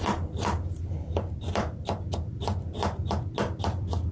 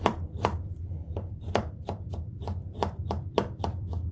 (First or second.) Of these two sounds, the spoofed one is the second